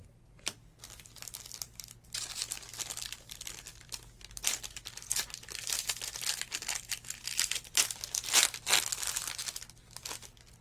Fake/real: real